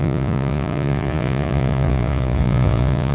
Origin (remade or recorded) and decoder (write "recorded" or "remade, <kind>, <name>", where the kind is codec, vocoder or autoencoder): remade, vocoder, Vocos